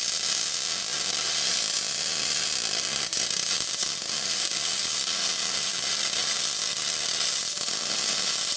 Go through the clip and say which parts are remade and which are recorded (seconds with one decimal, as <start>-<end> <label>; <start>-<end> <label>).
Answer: 0.0-6.2 recorded; 6.2-7.4 remade; 7.4-8.6 recorded